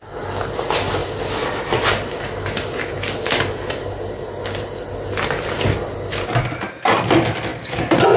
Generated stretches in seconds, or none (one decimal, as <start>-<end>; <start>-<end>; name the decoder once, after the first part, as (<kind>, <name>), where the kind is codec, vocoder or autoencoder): none